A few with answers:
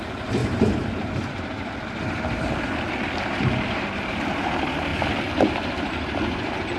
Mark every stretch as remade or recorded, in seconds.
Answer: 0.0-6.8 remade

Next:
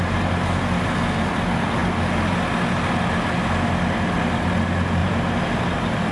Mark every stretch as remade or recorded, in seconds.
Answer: 0.0-5.0 recorded; 5.0-5.6 remade; 5.6-6.1 recorded

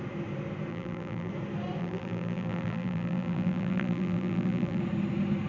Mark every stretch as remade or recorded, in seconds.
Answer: 0.0-0.7 recorded; 0.7-1.3 remade; 1.3-1.8 recorded; 1.8-4.8 remade; 4.8-5.5 recorded

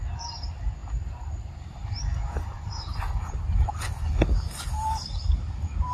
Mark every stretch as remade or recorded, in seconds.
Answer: 0.0-0.8 recorded; 0.8-3.4 remade; 3.4-5.9 recorded

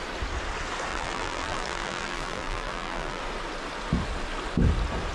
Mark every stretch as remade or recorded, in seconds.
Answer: 0.0-0.9 recorded; 0.9-3.2 remade; 3.2-5.1 recorded